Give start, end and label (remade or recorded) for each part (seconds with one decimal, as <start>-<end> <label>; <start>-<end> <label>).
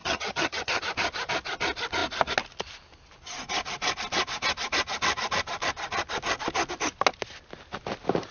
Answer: 0.0-0.8 remade; 0.8-8.3 recorded